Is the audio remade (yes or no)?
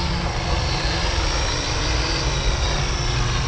no